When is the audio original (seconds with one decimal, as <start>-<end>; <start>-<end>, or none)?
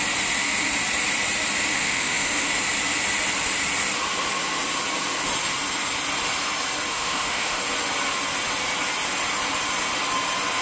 0.0-1.7; 2.5-6.9; 7.6-10.6